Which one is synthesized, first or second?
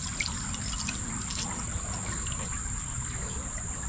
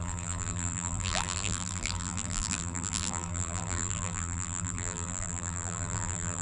second